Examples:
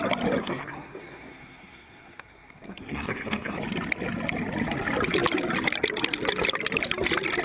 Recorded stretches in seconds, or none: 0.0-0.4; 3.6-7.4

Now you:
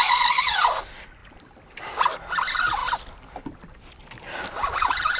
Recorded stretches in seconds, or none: 0.7-1.2; 2.4-5.2

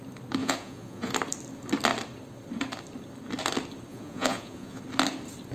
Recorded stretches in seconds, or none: 0.0-0.4; 1.1-3.9; 4.8-5.5

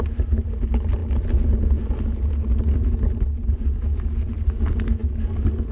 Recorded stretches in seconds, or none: 0.0-5.7

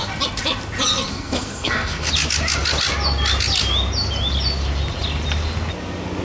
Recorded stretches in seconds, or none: 0.0-1.1; 2.1-6.2

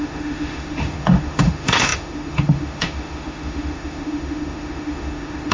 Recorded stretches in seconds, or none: none

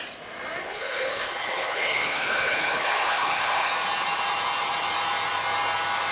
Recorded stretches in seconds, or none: 0.0-0.6; 3.7-6.1